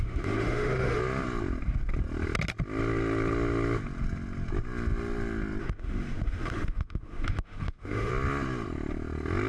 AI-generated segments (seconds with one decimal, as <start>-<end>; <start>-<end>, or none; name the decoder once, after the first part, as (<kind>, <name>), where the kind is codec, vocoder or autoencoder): 0.0-1.0 (autoencoder, DAC-VAE); 5.6-8.1